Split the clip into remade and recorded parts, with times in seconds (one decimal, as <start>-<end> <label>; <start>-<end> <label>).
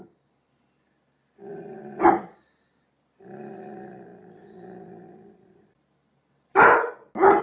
0.0-7.4 recorded